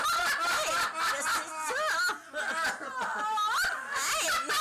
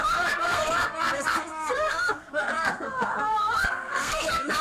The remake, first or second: second